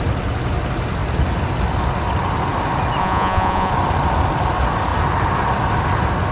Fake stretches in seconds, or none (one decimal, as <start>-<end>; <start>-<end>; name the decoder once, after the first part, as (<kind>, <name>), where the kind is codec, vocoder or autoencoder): 3.0-3.7 (vocoder, Vocos)